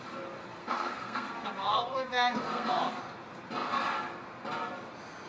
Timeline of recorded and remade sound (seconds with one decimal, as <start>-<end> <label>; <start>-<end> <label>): 0.0-0.6 recorded; 0.6-3.0 remade; 3.0-5.3 recorded